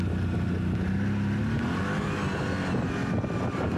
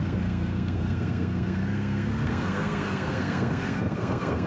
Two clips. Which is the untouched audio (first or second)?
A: first